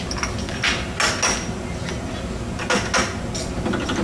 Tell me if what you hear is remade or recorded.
recorded